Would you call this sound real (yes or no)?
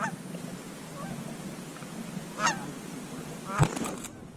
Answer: yes